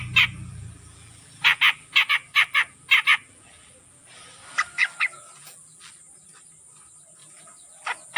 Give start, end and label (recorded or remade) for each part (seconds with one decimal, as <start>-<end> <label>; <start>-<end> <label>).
0.0-4.1 remade; 4.1-4.8 recorded; 4.8-5.9 remade; 5.9-7.2 recorded; 7.2-8.2 remade